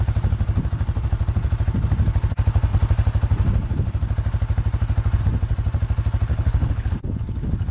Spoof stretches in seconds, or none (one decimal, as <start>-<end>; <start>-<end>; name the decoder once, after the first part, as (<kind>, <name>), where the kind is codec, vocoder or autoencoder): 6.3-6.9 (codec, HILCodec)